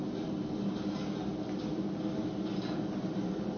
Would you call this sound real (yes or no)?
yes